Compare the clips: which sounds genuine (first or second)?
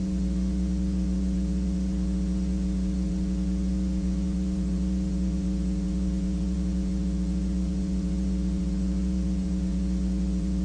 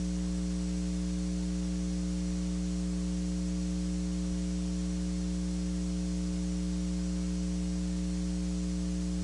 second